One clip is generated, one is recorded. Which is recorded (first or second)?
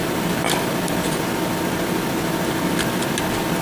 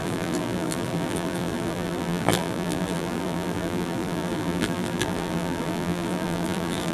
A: first